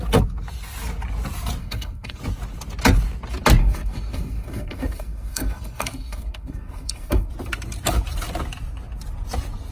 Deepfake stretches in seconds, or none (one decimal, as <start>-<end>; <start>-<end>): 1.6-2.2; 3.6-7.3